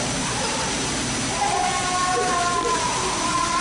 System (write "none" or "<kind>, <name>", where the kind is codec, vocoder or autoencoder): none